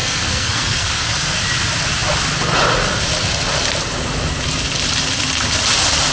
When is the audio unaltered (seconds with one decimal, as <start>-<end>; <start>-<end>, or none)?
1.4-6.1